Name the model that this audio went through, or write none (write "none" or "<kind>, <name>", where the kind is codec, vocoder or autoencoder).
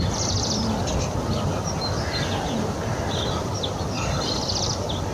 none